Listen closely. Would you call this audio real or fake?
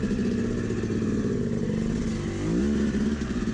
real